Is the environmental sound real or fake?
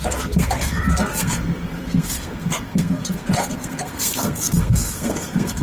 fake